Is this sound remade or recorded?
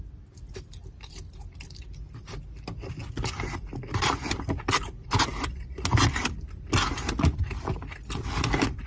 recorded